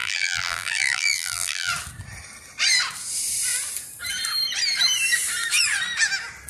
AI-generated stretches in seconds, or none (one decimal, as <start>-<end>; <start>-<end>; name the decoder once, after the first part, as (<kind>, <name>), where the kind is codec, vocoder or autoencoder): 0.0-1.7 (vocoder, BigVGAN v2)